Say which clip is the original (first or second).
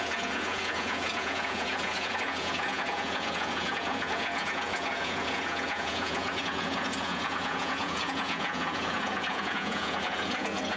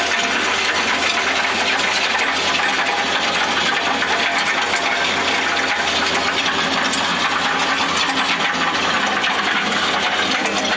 second